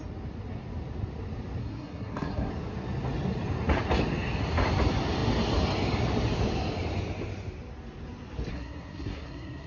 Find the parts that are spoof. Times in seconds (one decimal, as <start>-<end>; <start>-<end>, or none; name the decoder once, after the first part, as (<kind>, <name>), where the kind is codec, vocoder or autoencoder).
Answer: 1.6-2.5 (codec, SNAC); 8.5-9.7